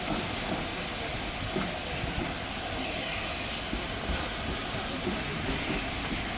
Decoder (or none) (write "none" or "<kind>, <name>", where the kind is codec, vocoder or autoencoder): none